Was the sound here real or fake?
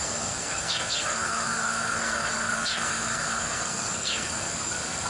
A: fake